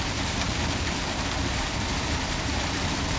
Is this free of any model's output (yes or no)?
no